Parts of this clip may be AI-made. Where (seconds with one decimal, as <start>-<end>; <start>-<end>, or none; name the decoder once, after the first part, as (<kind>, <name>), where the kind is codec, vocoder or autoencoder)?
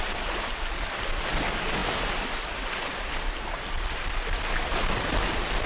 none